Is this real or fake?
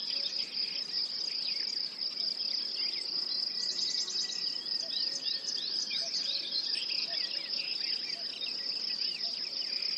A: real